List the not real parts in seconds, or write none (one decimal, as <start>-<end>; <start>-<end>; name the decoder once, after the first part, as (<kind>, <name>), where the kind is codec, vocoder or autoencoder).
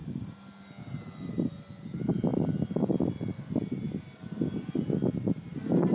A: none